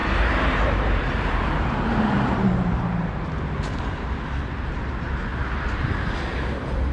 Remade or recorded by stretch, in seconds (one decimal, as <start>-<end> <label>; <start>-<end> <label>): 0.0-4.1 remade; 4.1-6.9 recorded